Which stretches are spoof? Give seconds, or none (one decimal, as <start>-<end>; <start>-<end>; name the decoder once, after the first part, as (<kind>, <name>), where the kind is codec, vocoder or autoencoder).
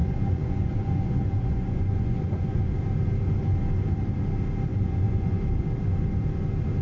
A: 0.0-2.7 (vocoder, Vocos); 4.7-5.4